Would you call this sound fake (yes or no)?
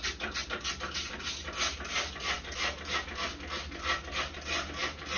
no